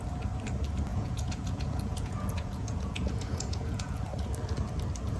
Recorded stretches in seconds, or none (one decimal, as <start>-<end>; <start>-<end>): 0.0-0.9; 4.0-5.2